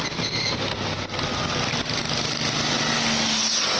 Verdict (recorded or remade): recorded